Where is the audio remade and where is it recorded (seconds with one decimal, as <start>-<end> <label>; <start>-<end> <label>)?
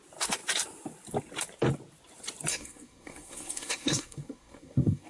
0.0-2.5 recorded; 2.5-5.1 remade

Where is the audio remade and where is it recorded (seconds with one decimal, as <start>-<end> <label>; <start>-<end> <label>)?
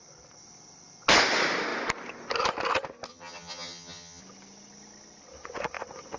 0.0-3.1 recorded; 3.1-4.2 remade; 4.2-6.2 recorded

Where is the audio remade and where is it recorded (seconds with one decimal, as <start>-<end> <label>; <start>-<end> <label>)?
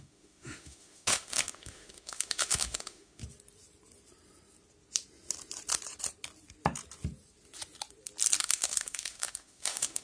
0.0-3.2 remade; 3.2-8.4 recorded; 8.4-10.0 remade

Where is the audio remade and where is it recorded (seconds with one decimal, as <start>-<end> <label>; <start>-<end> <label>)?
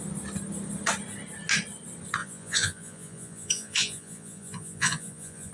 0.0-2.2 recorded; 2.2-5.5 remade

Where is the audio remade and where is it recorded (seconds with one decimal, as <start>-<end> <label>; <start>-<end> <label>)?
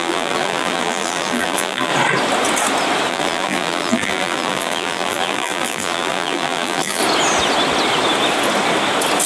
0.0-1.9 remade; 1.9-3.1 recorded; 3.1-7.0 remade; 7.0-9.3 recorded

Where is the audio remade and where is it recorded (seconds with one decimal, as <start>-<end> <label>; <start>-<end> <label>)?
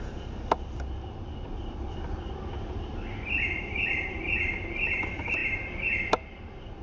0.0-6.8 recorded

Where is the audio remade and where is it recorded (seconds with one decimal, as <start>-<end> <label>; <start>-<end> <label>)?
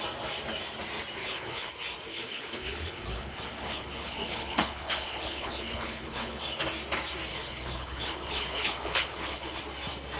0.0-1.2 recorded; 1.2-1.7 remade; 1.7-2.1 recorded; 2.1-6.4 remade; 6.4-7.3 recorded; 7.3-9.6 remade; 9.6-10.2 recorded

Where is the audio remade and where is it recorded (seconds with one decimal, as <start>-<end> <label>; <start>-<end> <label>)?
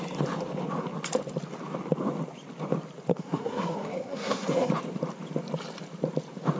0.0-3.1 recorded; 3.1-4.7 remade; 4.7-6.6 recorded